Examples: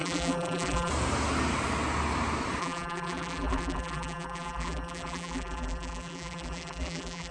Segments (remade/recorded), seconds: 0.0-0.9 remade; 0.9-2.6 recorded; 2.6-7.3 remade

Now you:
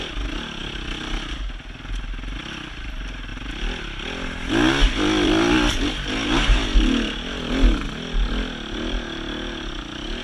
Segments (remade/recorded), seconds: 0.0-10.2 recorded

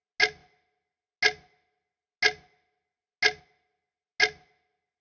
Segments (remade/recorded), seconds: 0.0-5.0 recorded

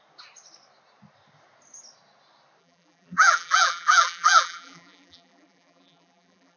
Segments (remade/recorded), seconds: 0.0-2.6 recorded; 2.6-6.6 remade

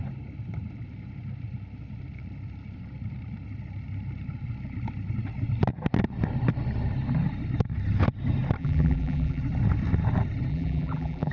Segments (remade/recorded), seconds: 0.0-8.6 recorded; 8.6-9.4 remade; 9.4-10.5 recorded; 10.5-11.3 remade